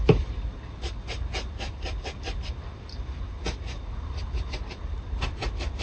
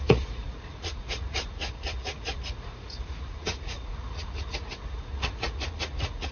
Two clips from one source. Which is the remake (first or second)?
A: second